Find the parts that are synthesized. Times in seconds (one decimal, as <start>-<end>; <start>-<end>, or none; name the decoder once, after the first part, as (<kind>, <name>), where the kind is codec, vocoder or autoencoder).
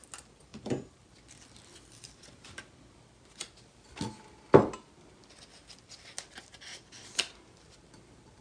0.5-2.9 (vocoder, BigVGAN v2)